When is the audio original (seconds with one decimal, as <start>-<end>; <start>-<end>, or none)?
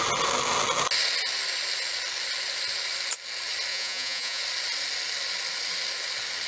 0.0-3.7; 4.4-6.5